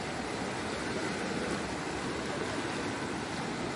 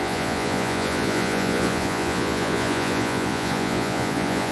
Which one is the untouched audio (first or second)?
first